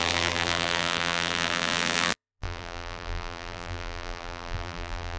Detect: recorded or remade remade